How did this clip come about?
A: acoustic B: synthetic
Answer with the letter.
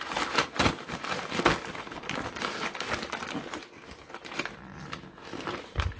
A